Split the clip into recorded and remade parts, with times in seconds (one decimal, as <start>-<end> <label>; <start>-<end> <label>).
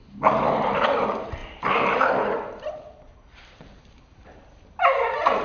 0.0-1.4 remade; 1.4-2.7 recorded; 2.7-5.4 remade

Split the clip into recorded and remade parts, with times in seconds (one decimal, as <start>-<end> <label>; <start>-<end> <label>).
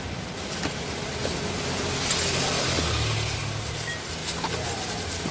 0.0-5.3 recorded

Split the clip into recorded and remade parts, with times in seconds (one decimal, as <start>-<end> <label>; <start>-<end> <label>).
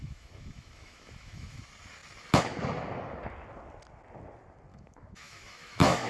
0.0-1.6 remade; 1.6-4.7 recorded; 4.7-6.1 remade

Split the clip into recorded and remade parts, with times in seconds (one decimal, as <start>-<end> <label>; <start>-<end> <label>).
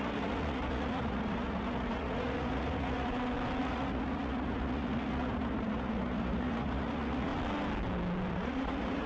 0.0-3.1 remade; 3.1-3.6 recorded; 3.6-7.3 remade; 7.3-8.3 recorded; 8.3-9.1 remade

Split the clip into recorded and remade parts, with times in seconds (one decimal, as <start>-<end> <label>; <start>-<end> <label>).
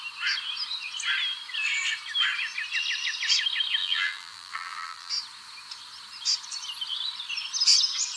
0.0-3.8 recorded; 3.8-5.1 remade; 5.1-8.2 recorded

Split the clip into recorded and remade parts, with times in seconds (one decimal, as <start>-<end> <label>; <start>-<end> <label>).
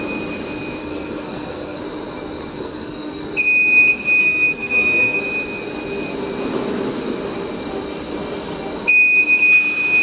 0.0-0.8 recorded; 0.8-1.8 remade; 1.8-2.5 recorded; 2.5-3.2 remade; 3.2-4.2 recorded; 4.2-5.2 remade; 5.2-10.0 recorded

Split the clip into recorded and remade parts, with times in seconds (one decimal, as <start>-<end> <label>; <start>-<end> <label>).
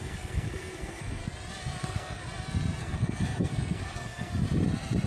0.0-1.2 remade; 1.2-1.8 recorded; 1.8-2.2 remade; 2.2-2.8 recorded; 2.8-4.3 remade; 4.3-5.1 recorded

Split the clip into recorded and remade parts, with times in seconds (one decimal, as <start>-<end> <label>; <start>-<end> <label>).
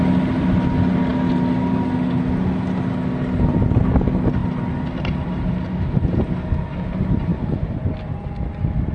0.0-7.3 recorded; 7.3-7.8 remade; 7.8-8.9 recorded